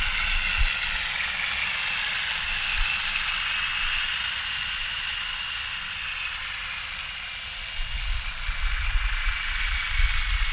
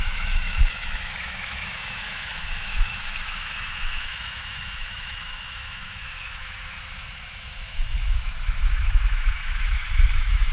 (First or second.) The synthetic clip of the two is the second